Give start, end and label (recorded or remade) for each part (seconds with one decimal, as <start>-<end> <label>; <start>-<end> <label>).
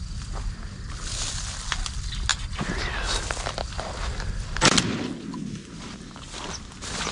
0.0-7.1 recorded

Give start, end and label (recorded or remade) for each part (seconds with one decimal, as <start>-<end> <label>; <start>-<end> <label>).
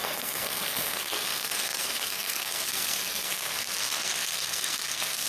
0.0-5.3 remade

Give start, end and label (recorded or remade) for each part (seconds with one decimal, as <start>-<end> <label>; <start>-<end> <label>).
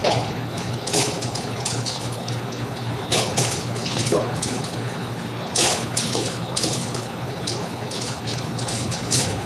0.0-9.5 remade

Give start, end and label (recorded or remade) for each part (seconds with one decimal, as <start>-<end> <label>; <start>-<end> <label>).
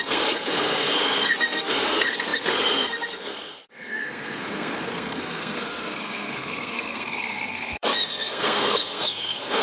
0.0-9.6 remade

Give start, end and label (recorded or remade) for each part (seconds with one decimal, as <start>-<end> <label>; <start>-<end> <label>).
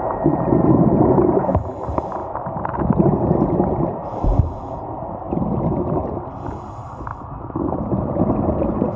0.0-9.0 recorded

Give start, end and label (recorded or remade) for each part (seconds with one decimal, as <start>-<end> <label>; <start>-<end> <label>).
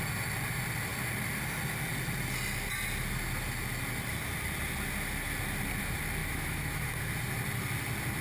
0.0-6.2 recorded; 6.2-7.1 remade; 7.1-8.2 recorded